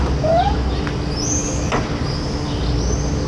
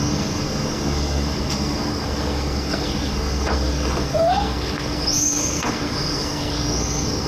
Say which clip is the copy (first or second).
second